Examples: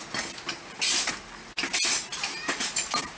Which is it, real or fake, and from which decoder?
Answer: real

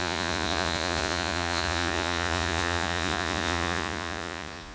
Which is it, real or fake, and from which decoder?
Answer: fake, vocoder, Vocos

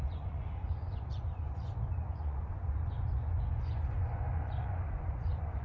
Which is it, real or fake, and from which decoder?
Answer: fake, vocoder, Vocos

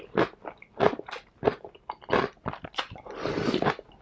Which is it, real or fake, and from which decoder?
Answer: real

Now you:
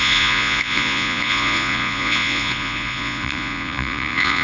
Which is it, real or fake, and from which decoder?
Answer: fake, vocoder, Vocos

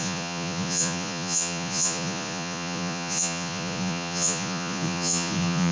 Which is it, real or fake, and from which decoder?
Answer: fake, vocoder, Vocos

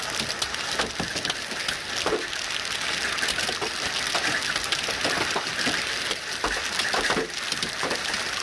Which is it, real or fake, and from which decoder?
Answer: real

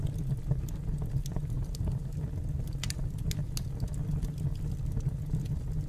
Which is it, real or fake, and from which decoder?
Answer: real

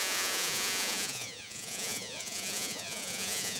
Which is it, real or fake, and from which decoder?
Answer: fake, vocoder, Vocos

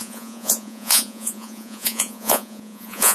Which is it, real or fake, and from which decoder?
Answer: fake, vocoder, Vocos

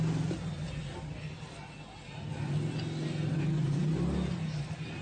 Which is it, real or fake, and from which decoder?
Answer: real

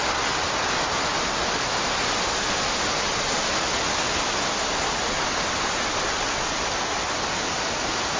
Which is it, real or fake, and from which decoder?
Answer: real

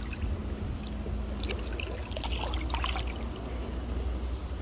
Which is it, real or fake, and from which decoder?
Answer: real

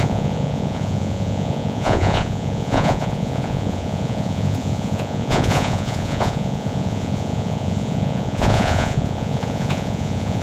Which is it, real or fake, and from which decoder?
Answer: fake, vocoder, Vocos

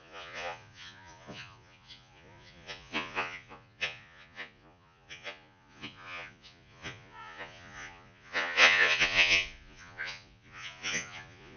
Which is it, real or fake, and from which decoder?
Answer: fake, vocoder, Vocos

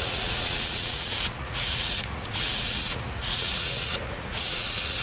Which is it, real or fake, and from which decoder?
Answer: fake, vocoder, Vocos